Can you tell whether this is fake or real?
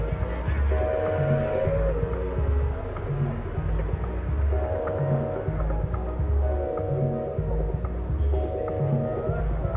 real